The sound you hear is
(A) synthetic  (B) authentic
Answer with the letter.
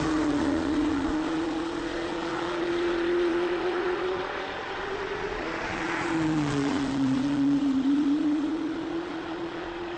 A